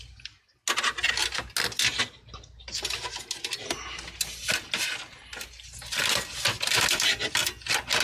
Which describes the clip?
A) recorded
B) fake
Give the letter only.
A